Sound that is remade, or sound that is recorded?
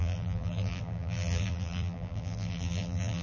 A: remade